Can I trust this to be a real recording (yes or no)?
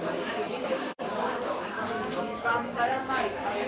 no